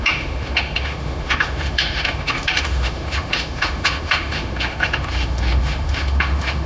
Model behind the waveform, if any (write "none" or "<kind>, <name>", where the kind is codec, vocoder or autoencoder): autoencoder, DAC-VAE